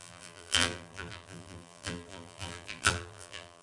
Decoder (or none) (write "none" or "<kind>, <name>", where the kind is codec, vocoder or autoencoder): vocoder, BigVGAN v2